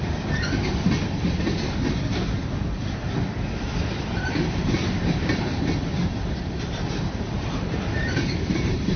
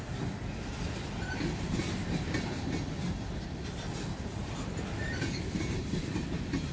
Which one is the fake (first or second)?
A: first